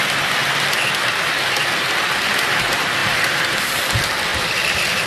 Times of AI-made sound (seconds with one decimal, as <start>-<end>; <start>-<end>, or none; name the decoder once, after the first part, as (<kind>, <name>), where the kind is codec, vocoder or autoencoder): 3.0-3.6 (vocoder, BigVGAN v2); 4.3-5.1

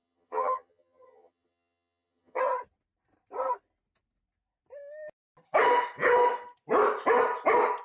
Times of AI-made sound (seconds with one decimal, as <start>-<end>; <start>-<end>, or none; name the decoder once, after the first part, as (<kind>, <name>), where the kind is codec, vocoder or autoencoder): 0.0-2.4 (vocoder, HiFi-GAN)

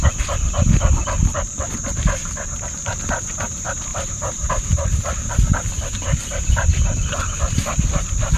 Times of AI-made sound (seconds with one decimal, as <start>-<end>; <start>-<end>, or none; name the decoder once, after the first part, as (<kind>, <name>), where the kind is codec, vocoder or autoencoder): 2.2-3.0 (vocoder, BigVGAN v2); 3.9-5.3

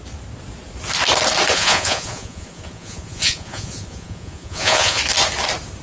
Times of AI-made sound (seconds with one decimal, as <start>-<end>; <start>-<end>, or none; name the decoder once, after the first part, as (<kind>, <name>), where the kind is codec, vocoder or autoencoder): 1.5-5.0 (vocoder, Vocos)